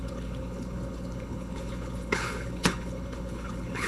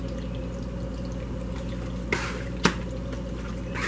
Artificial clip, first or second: first